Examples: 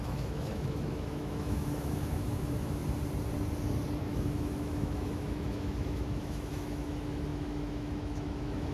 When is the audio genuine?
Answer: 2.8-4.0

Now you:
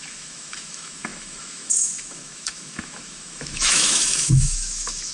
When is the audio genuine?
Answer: none